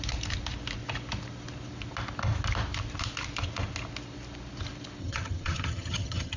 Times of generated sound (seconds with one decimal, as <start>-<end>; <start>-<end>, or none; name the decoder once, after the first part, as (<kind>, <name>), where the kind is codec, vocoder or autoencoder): 5.0-6.4 (vocoder, HiFi-GAN)